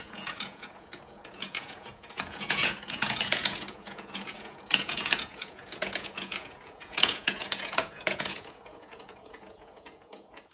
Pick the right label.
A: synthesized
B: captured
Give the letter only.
A